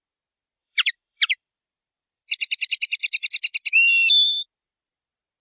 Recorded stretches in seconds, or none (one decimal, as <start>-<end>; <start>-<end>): 0.0-0.6; 2.2-5.4